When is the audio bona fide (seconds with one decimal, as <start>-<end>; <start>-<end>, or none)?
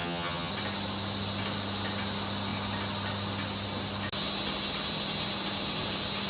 0.5-6.3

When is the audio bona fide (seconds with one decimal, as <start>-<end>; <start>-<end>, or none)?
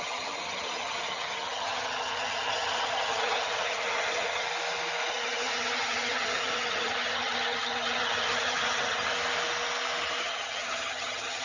4.5-5.1; 9.1-10.2